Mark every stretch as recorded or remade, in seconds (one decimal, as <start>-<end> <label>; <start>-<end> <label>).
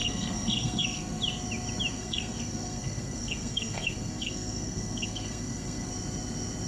0.0-1.2 remade; 1.2-1.9 recorded; 1.9-5.9 remade; 5.9-6.7 recorded